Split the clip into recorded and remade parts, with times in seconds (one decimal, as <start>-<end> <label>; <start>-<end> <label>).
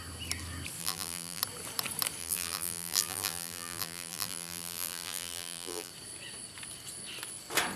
0.0-0.8 recorded; 0.8-1.4 remade; 1.4-2.2 recorded; 2.2-5.9 remade; 5.9-7.8 recorded